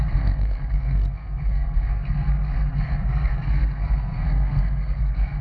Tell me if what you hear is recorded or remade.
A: remade